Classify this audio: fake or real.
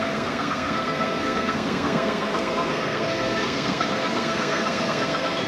fake